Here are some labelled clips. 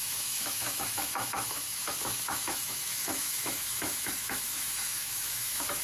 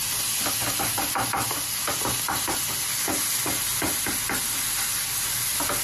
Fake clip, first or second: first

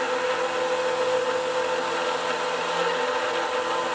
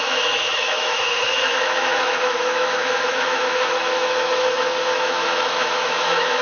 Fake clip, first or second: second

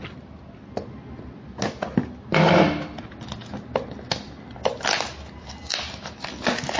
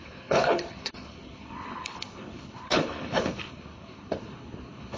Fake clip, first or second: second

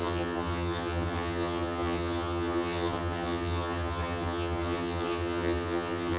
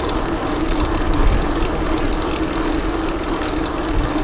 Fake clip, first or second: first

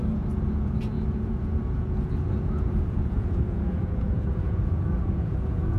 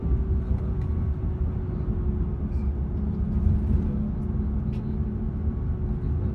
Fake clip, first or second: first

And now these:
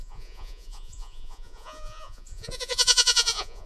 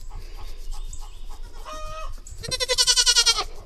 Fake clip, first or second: first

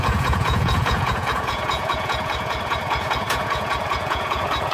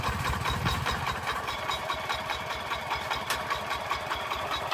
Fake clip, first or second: first